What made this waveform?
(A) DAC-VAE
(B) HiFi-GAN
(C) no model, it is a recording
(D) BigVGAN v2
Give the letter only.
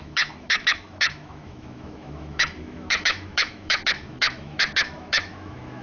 A